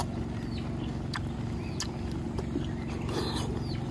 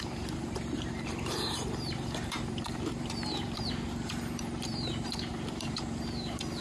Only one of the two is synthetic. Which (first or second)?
second